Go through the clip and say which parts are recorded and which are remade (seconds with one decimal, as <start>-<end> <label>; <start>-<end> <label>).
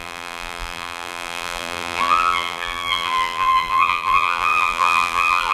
0.0-5.5 remade